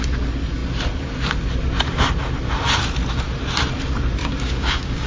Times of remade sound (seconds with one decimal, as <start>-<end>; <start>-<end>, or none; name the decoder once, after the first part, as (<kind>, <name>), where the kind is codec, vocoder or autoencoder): 4.2-5.1 (codec, DAC)